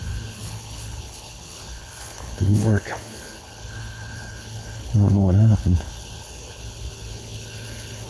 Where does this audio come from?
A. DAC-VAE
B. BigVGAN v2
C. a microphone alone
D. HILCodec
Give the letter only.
D